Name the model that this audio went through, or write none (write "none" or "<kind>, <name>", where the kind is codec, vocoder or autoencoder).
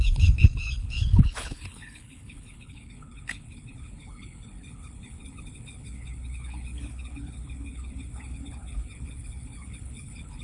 codec, HILCodec